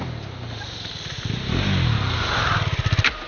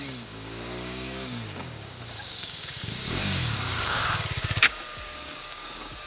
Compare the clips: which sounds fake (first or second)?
second